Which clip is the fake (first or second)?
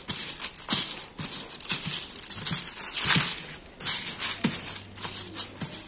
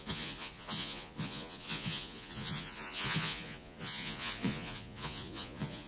second